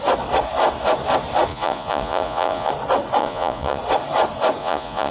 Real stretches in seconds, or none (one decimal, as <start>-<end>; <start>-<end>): 0.0-1.5; 2.7-3.2; 3.8-4.6